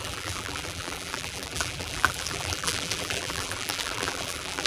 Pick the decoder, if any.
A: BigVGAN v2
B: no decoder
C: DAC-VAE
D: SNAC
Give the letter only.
A